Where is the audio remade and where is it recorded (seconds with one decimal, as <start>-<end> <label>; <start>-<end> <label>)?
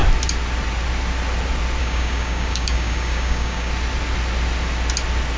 0.0-1.8 recorded; 1.8-3.7 remade; 3.7-5.4 recorded